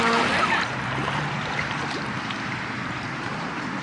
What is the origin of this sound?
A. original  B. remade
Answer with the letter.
B